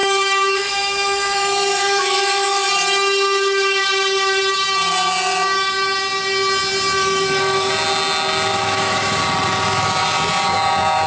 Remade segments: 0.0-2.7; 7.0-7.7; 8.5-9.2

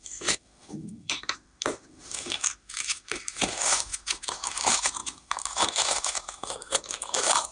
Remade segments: 0.0-7.5